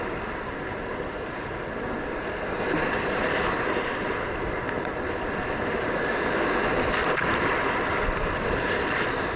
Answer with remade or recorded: recorded